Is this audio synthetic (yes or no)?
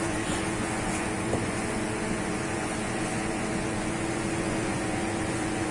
yes